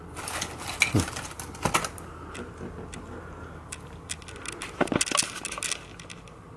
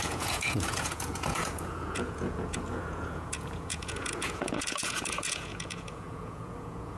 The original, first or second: first